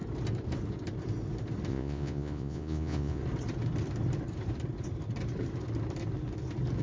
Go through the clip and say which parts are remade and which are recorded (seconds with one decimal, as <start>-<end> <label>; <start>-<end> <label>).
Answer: 0.0-1.7 recorded; 1.7-3.2 remade; 3.2-6.8 recorded